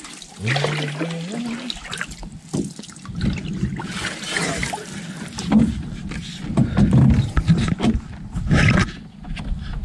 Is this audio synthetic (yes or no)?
no